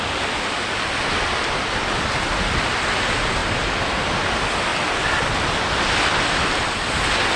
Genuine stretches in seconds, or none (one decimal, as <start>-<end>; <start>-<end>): 0.0-7.4